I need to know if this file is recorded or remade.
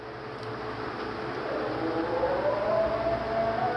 recorded